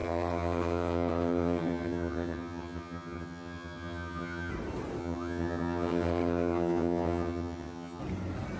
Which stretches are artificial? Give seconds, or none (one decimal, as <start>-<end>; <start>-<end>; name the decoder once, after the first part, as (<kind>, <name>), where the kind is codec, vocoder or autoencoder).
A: 0.0-4.5 (vocoder, HiFi-GAN); 5.0-8.0